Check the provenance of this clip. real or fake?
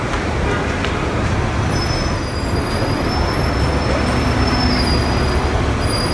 real